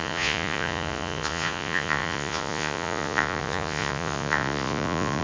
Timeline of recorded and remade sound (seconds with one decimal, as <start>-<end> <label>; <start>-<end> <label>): 0.0-5.2 remade